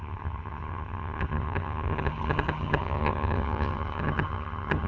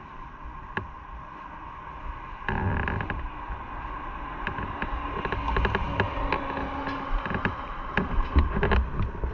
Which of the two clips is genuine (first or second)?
second